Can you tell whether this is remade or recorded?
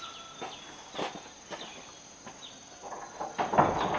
recorded